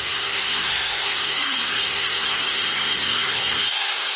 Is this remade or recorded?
remade